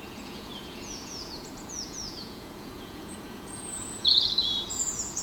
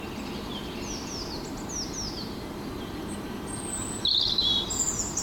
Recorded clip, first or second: second